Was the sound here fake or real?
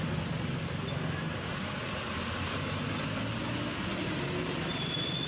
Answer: real